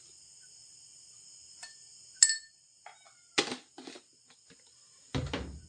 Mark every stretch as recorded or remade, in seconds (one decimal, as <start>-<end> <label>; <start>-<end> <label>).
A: 0.0-5.7 recorded